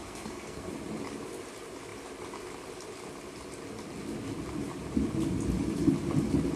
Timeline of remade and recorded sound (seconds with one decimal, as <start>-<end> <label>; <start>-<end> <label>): 0.0-0.7 remade; 0.7-6.6 recorded